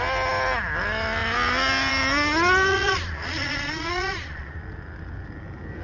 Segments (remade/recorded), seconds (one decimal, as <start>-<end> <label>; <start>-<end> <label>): 0.0-2.7 recorded; 2.7-4.6 remade; 4.6-5.8 recorded